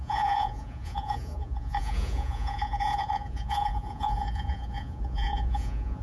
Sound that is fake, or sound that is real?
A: fake